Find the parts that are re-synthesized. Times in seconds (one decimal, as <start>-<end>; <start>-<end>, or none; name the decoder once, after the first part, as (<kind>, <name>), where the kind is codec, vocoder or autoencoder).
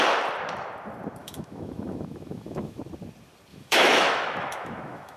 1.2-2.8 (autoencoder, DAC-VAE); 3.5-5.2